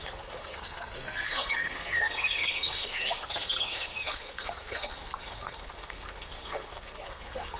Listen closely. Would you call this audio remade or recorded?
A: remade